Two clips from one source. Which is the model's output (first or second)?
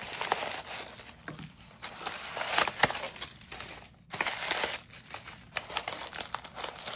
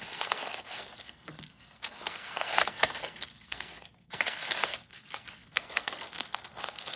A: second